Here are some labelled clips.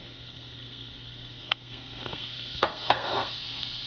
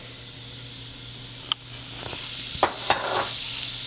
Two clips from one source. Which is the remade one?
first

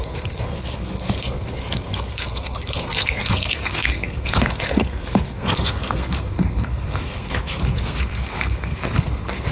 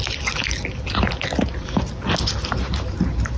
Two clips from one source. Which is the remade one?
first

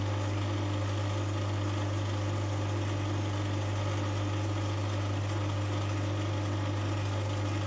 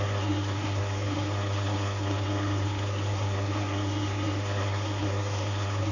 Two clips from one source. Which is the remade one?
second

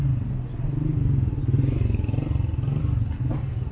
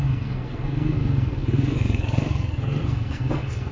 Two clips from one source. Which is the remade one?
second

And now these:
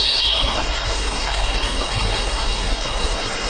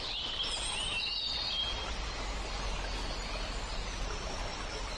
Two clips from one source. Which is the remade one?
first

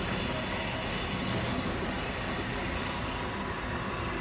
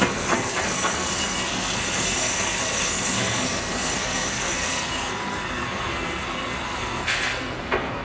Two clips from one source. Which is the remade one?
second